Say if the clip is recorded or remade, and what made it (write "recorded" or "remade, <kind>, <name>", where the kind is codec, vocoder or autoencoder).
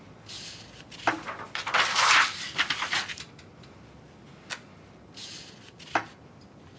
recorded